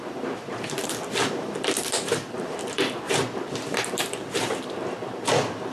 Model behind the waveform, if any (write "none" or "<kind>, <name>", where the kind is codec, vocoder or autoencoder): vocoder, BigVGAN v2